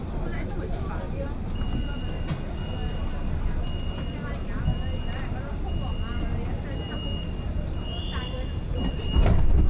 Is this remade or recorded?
recorded